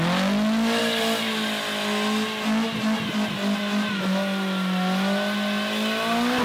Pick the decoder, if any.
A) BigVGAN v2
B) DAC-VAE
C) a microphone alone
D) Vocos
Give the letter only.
C